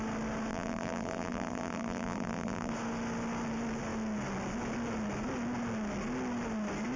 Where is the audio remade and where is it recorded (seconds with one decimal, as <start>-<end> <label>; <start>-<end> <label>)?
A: 0.0-0.5 recorded; 0.5-2.7 remade; 2.7-7.0 recorded